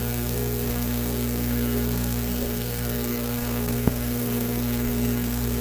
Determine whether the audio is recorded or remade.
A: remade